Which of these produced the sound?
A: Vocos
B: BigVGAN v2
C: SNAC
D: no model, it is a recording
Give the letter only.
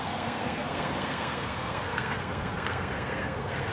C